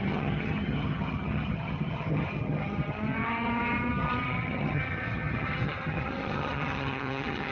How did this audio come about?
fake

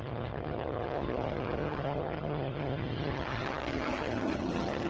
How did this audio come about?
fake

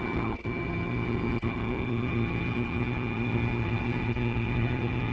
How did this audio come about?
fake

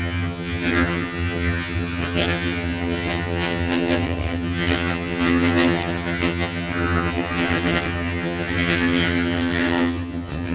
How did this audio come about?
fake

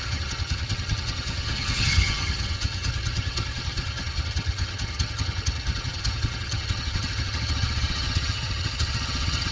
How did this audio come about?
fake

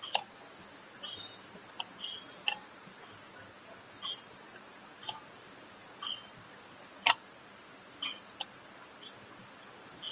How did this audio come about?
real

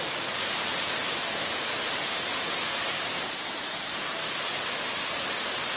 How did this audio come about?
real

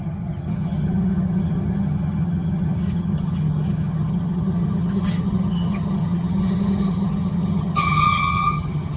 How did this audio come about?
fake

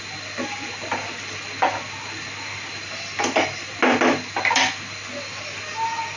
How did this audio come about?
real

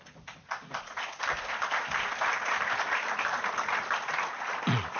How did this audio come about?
real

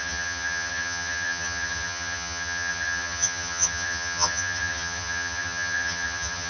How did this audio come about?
fake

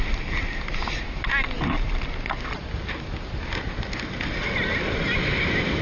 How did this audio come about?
real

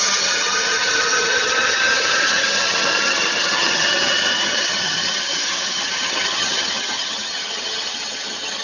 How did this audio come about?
fake